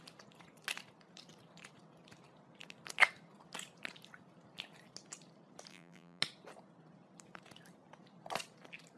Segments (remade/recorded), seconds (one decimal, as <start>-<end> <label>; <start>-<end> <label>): 0.0-5.7 recorded; 5.7-6.2 remade; 6.2-9.0 recorded